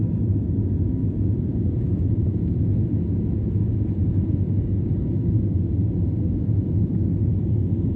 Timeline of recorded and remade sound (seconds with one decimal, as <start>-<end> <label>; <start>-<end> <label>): 0.0-1.0 recorded; 1.0-4.9 remade; 4.9-7.2 recorded; 7.2-8.0 remade